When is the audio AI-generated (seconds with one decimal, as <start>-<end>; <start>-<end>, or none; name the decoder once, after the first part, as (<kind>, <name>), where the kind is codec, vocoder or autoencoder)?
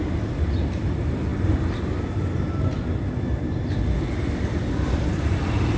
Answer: 0.0-1.3 (vocoder, BigVGAN v2); 4.8-5.8